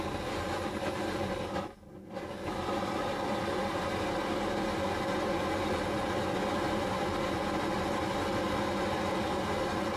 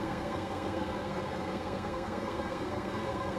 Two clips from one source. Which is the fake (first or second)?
second